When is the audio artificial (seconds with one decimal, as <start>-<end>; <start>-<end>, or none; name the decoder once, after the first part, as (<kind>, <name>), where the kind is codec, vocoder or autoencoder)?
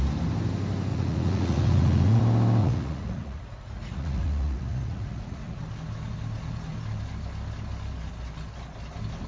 0.9-2.2 (vocoder, Vocos); 2.6-5.6